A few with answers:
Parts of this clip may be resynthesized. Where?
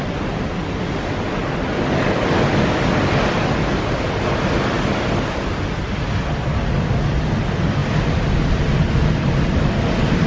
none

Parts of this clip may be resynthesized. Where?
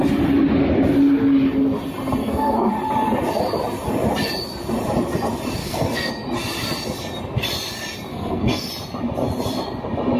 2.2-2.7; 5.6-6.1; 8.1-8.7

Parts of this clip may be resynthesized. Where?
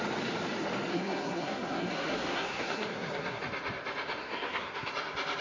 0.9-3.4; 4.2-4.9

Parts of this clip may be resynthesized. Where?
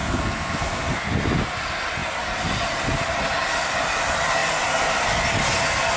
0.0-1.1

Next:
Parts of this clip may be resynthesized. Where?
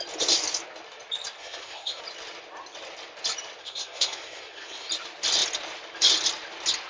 1.4-2.0; 3.6-4.9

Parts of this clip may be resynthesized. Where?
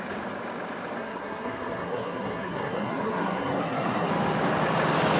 1.0-4.1